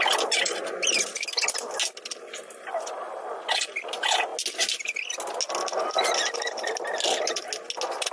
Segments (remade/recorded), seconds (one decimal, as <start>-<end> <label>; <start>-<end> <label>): 0.0-8.1 recorded